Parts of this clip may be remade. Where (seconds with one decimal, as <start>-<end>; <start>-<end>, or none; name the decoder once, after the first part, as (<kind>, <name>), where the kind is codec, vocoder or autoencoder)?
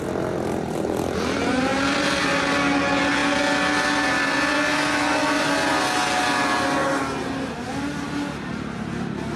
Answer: none